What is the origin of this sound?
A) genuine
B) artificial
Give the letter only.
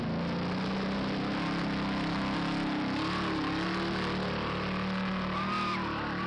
A